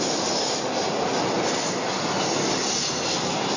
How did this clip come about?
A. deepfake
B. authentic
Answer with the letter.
B